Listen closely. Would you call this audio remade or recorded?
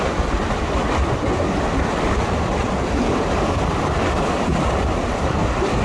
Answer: remade